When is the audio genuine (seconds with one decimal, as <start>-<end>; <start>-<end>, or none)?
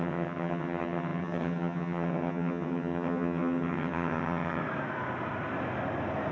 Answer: 4.6-6.3